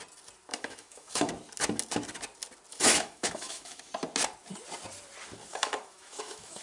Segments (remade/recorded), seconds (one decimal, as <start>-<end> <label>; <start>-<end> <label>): 0.0-0.5 recorded; 0.5-1.3 remade; 1.3-2.7 recorded; 2.7-3.9 remade; 3.9-5.5 recorded; 5.5-6.6 remade